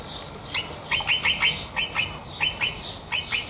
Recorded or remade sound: recorded